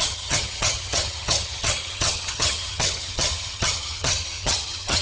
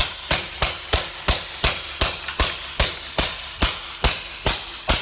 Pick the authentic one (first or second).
second